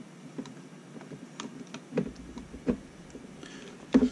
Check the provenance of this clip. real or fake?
real